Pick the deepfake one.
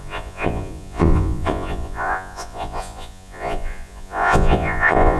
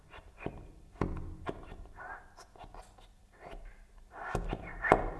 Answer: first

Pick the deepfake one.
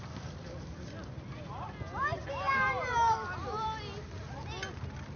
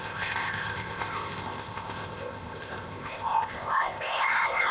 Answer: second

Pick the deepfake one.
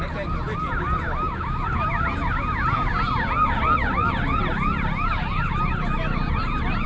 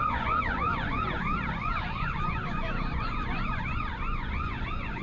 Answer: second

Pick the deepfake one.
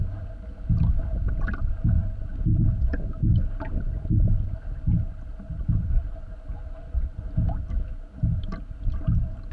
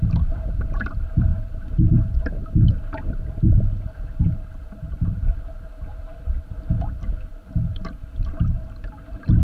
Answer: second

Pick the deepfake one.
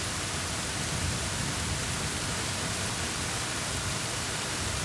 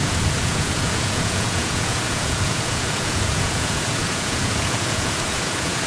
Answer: second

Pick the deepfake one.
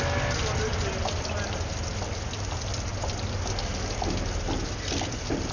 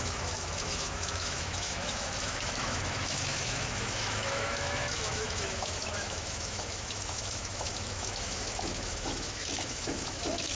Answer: second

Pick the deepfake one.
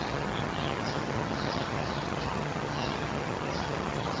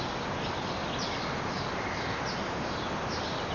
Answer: first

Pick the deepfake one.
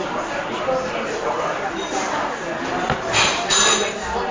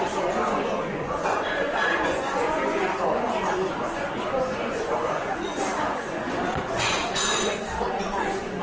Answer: second